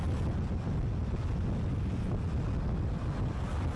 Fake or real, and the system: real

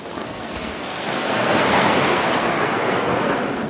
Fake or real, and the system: fake, codec, SNAC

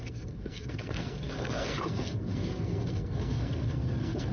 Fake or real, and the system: fake, codec, SNAC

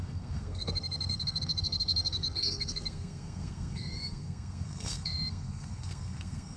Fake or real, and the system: fake, codec, SNAC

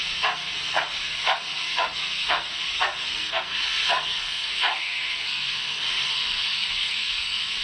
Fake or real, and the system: fake, codec, SNAC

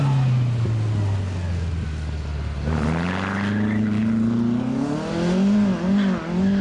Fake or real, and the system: real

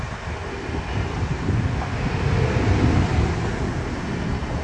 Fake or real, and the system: real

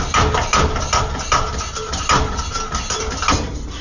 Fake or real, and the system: real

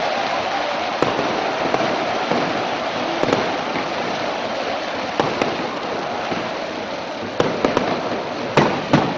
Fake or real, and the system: real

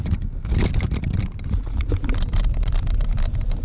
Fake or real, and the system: real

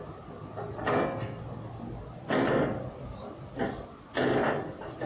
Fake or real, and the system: real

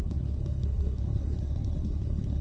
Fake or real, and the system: fake, codec, SNAC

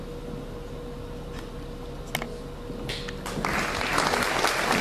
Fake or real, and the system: real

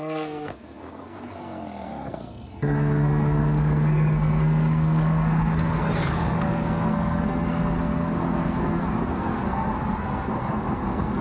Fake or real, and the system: fake, codec, SNAC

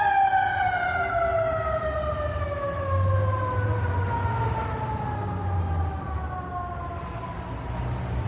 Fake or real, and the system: real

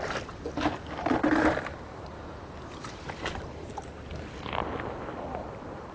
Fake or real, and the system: real